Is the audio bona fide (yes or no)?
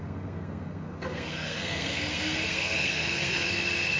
no